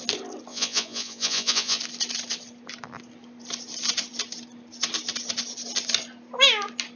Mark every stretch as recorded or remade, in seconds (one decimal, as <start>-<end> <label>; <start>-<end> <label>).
0.0-0.5 recorded; 0.5-1.8 remade; 1.8-7.0 recorded